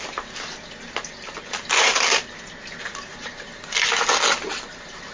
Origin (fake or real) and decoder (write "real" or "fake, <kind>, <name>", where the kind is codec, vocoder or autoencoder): real